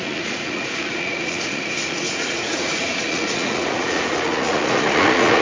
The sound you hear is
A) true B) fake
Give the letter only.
B